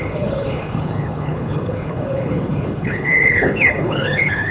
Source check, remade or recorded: remade